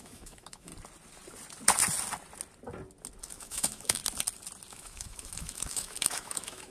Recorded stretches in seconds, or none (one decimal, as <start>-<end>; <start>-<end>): 0.7-3.2; 4.0-4.7

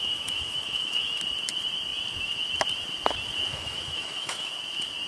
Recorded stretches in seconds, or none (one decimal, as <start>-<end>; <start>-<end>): 1.2-3.5; 4.5-5.1

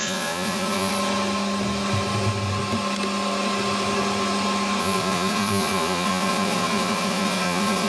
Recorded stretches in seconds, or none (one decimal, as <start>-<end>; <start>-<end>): 0.9-4.8

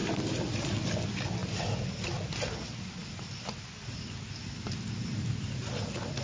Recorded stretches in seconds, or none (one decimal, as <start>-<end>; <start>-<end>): 0.0-6.2